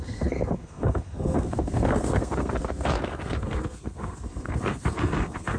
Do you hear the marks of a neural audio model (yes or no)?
yes